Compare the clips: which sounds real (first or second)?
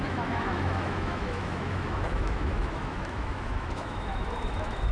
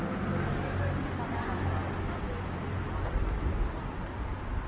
second